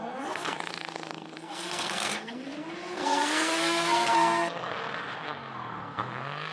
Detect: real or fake fake